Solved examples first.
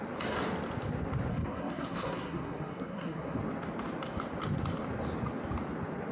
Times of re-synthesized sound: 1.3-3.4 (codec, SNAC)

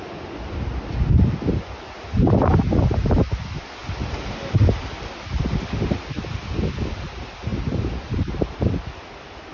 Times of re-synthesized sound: none

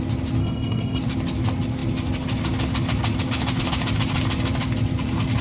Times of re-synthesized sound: 0.4-1.0 (codec, SNAC)

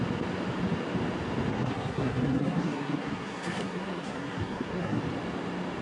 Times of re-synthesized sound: 1.5-5.0 (codec, SNAC)

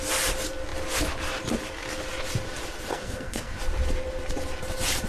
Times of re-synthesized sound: 2.9-3.6 (codec, SNAC)